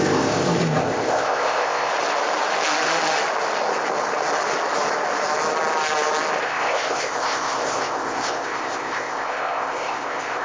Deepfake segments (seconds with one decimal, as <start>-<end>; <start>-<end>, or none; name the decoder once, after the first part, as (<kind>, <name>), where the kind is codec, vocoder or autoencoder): 0.0-1.9 (codec, ZipCodec); 6.4-10.4